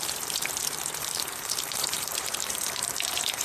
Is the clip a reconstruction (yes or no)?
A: yes